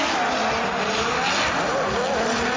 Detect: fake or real real